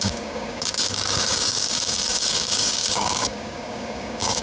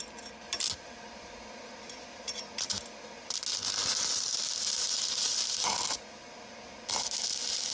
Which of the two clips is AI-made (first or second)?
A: first